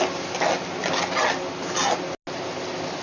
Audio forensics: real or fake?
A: real